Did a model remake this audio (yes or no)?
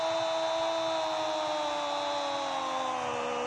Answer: no